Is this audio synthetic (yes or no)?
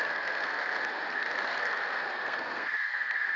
yes